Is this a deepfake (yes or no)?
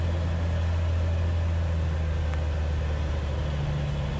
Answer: no